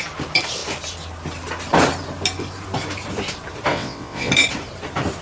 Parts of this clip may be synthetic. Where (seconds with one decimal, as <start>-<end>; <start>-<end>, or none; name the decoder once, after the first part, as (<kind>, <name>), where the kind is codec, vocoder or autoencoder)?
3.7-4.3 (vocoder, WaveNeXt)